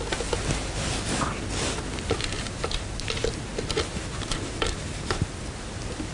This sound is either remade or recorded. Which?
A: recorded